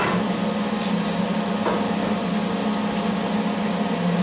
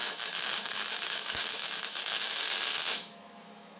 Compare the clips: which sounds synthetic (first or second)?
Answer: second